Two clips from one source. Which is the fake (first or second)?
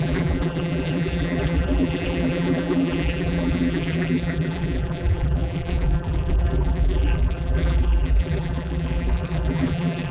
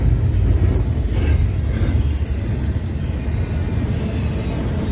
first